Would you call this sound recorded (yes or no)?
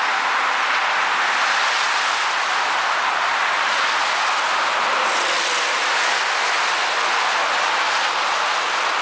yes